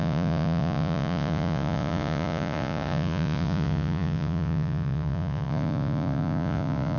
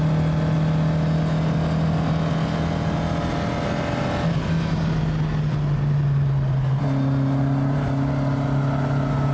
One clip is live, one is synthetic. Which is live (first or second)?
second